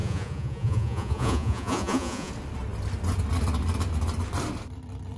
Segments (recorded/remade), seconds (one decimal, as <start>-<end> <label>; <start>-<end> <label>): 0.0-2.3 remade; 2.3-5.2 recorded